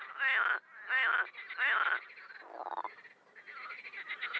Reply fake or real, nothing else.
real